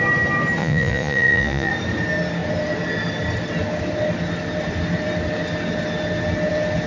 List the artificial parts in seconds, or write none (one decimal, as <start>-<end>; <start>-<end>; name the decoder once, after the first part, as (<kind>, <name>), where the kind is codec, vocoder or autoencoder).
0.6-1.7 (vocoder, Vocos)